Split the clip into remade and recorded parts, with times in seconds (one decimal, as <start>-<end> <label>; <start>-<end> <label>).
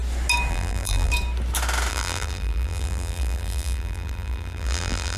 0.0-0.5 recorded; 0.5-1.1 remade; 1.1-1.9 recorded; 1.9-5.2 remade